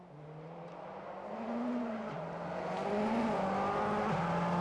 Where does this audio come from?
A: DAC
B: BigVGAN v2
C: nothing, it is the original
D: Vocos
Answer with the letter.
C